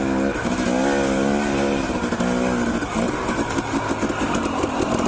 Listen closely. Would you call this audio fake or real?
real